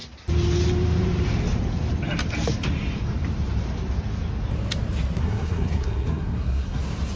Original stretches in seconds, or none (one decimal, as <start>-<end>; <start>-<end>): 0.0-5.2; 6.8-7.2